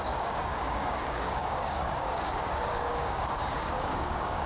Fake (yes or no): yes